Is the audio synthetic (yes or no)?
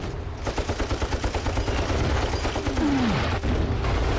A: no